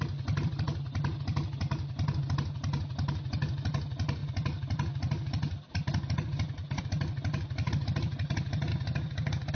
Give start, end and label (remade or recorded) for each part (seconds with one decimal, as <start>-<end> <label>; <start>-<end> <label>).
0.0-8.7 recorded; 8.7-9.5 remade